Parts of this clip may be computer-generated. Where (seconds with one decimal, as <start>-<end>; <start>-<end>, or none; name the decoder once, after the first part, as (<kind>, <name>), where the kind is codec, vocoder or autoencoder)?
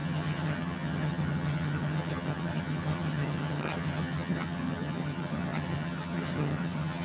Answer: 0.0-7.0 (vocoder, HiFi-GAN)